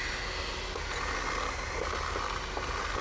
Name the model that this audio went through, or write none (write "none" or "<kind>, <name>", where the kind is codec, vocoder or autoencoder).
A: none